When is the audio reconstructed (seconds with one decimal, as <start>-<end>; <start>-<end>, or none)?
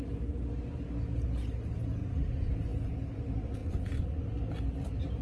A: 2.0-2.5; 3.6-4.2